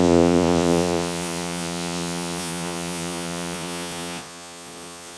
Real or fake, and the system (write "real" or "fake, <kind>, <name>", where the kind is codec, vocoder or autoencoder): fake, vocoder, Vocos